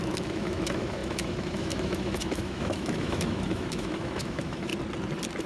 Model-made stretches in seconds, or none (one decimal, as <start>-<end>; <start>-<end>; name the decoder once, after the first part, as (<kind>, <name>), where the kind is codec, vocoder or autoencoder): 0.0-4.7 (autoencoder, DAC-VAE)